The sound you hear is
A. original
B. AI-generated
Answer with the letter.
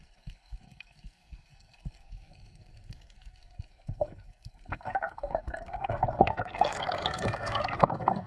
B